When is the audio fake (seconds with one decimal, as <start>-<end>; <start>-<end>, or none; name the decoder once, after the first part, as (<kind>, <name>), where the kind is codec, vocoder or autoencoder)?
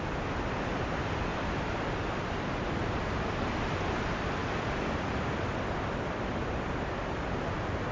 none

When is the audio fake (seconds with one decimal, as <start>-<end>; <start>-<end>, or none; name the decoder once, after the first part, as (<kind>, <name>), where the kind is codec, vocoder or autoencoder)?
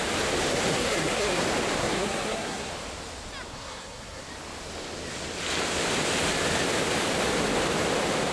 0.7-1.4 (codec, SNAC); 1.8-2.7; 3.5-4.2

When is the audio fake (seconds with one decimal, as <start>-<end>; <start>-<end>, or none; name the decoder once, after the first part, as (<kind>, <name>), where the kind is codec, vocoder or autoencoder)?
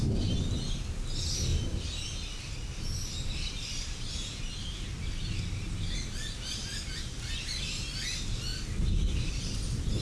none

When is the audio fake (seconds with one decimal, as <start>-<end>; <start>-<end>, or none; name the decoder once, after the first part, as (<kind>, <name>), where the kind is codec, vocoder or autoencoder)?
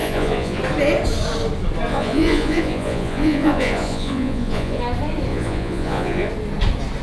0.0-0.6 (vocoder, Vocos); 1.9-4.8; 5.3-6.3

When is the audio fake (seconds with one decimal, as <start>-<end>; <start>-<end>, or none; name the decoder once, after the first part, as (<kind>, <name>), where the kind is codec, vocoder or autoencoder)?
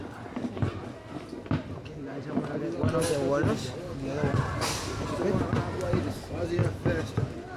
none